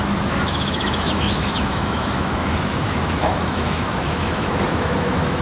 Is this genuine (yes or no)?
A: no